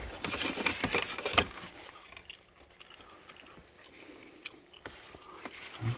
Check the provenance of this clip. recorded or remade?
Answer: recorded